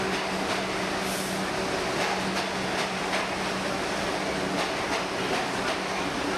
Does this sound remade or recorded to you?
recorded